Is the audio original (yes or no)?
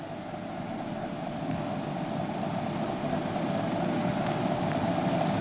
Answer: yes